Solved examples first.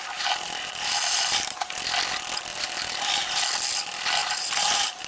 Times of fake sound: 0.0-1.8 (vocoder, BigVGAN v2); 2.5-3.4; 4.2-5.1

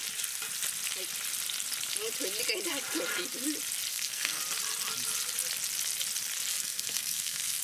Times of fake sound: 3.9-4.4 (codec, SNAC); 6.5-7.6